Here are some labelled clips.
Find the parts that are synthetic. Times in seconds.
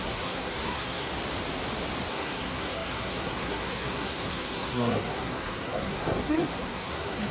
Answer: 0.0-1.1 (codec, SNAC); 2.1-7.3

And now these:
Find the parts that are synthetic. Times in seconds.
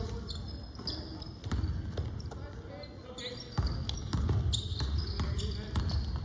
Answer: none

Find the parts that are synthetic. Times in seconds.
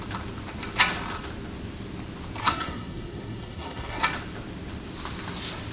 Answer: 2.4-4.0 (codec, SNAC)